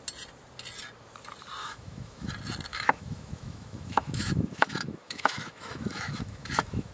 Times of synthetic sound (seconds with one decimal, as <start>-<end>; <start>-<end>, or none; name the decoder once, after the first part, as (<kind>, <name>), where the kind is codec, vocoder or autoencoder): 1.6-2.3 (autoencoder, DAC-VAE); 2.7-6.9